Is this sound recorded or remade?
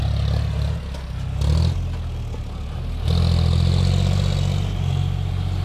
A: recorded